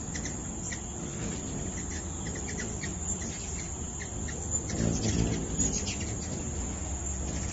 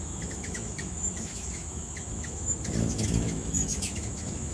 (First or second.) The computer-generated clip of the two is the second